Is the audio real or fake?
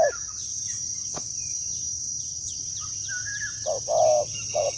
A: real